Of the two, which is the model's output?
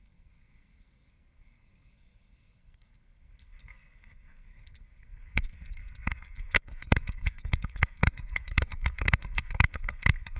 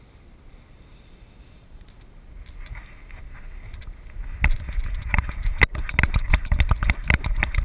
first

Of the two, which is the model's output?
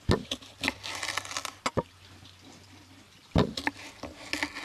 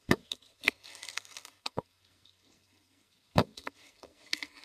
second